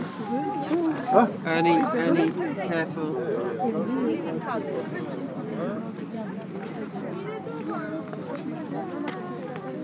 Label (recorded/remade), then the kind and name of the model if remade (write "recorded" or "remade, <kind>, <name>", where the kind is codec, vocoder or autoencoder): recorded